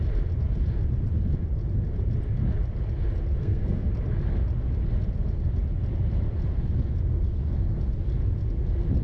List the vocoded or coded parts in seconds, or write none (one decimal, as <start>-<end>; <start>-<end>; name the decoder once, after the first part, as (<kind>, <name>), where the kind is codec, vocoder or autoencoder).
3.4-3.9 (codec, SNAC)